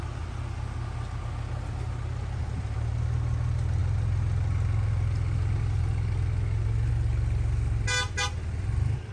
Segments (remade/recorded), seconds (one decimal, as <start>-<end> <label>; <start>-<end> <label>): 0.0-9.1 recorded

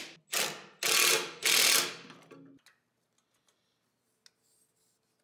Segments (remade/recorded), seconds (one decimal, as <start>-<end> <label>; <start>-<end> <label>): 0.0-5.2 recorded

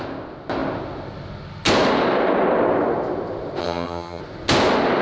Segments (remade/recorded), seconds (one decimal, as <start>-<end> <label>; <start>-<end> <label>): 0.0-3.6 recorded; 3.6-4.2 remade; 4.2-5.0 recorded

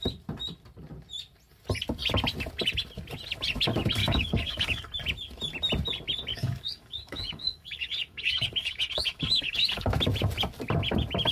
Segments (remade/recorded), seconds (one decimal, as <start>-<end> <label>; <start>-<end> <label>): 0.0-4.0 recorded; 4.0-4.9 remade; 4.9-6.3 recorded; 6.3-9.8 remade; 9.8-11.3 recorded

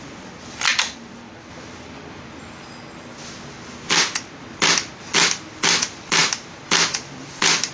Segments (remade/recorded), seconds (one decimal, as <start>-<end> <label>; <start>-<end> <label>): 0.0-7.7 recorded

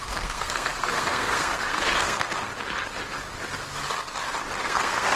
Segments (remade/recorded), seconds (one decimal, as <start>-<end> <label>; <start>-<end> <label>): 0.0-2.5 remade; 2.5-4.6 recorded; 4.6-5.2 remade